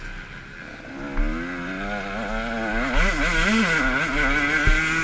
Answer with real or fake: real